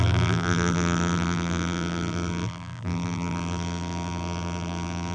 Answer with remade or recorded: remade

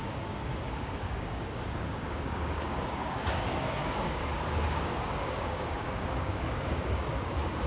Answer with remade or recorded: remade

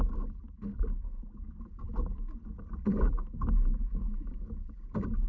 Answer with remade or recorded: remade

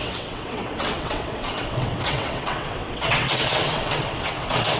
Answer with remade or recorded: remade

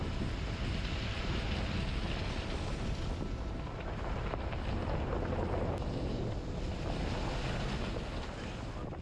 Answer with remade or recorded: recorded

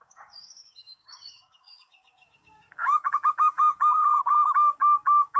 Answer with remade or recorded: remade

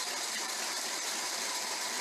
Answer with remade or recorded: remade